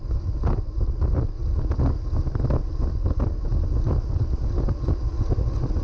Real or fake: real